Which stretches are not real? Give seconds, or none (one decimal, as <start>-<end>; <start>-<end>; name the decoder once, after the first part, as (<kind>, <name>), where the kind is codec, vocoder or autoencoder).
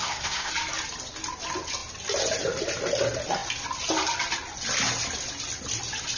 0.0-0.5 (codec, SNAC)